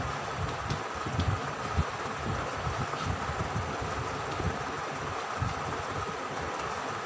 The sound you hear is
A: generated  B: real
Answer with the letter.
B